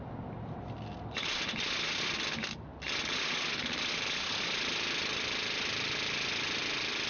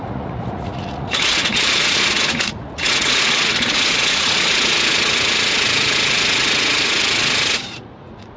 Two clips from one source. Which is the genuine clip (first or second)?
first